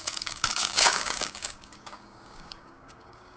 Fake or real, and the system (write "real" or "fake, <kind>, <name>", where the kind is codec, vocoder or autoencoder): fake, codec, DAC